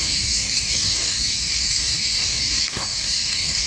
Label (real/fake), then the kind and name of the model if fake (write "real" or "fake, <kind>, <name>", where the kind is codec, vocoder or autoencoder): fake, codec, DAC